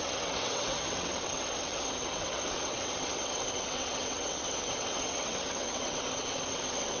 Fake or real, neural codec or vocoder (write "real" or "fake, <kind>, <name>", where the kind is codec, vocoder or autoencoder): fake, vocoder, WaveNeXt